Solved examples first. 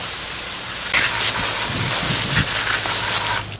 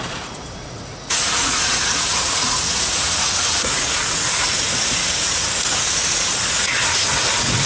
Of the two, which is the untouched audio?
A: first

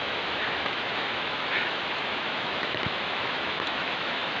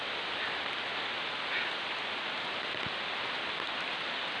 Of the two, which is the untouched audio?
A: second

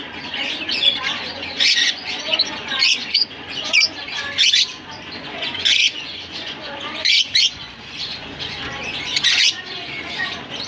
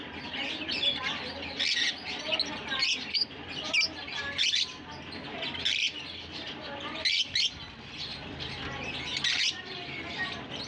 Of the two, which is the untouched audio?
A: second